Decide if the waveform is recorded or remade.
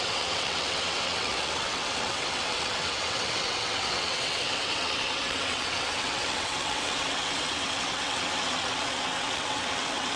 remade